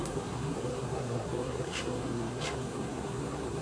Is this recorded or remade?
remade